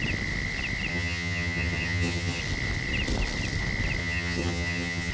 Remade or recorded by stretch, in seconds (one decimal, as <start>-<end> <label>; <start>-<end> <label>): 0.0-0.9 recorded; 0.9-2.4 remade; 2.4-4.0 recorded; 4.0-5.1 remade